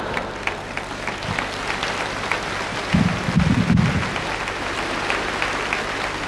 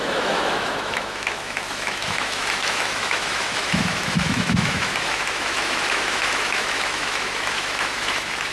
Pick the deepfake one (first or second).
second